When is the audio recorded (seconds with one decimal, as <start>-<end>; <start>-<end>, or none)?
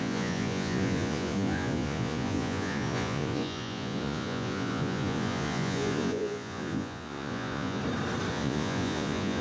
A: 7.8-8.3